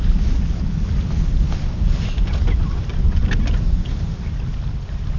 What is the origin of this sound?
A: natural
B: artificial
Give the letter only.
A